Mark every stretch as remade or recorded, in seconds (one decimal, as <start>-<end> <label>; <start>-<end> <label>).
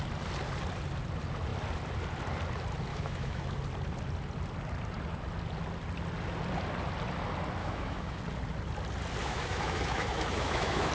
0.0-2.9 recorded; 2.9-3.6 remade; 3.6-7.6 recorded; 7.6-8.2 remade; 8.2-9.2 recorded; 9.2-10.9 remade